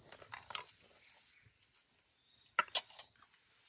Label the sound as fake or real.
real